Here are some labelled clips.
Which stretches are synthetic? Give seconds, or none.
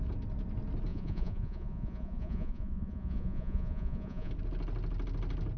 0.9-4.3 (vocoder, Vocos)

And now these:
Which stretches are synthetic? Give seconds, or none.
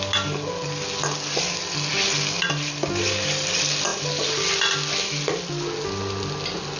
none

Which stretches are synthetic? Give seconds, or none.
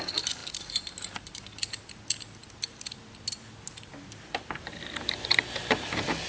none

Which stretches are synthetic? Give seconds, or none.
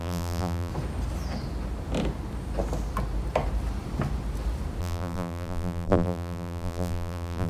0.0-0.7 (vocoder, BigVGAN v2); 4.8-7.5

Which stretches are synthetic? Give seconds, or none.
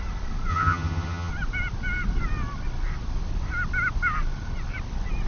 0.5-1.3 (vocoder, HiFi-GAN)